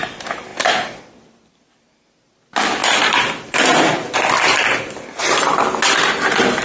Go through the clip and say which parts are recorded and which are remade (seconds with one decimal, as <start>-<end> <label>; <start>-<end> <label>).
0.0-6.6 recorded